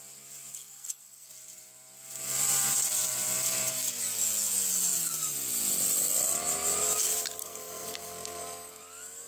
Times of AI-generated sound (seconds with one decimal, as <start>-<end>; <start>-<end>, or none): 0.5-1.3; 7.4-8.8